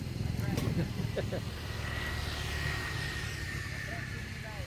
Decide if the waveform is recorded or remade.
recorded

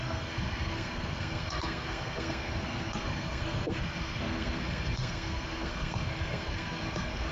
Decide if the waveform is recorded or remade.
remade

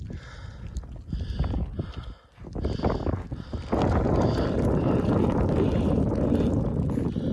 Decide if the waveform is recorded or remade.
recorded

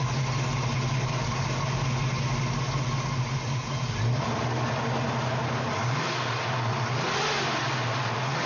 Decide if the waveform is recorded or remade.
recorded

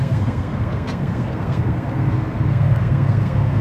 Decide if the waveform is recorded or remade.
remade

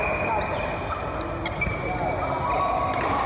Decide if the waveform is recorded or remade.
recorded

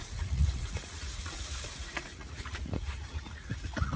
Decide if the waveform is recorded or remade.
remade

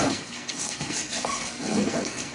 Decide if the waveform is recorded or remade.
remade